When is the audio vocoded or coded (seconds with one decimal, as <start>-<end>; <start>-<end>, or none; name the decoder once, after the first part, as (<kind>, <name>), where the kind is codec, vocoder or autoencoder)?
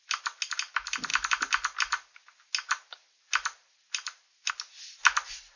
none